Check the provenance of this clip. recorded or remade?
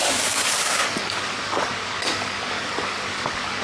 remade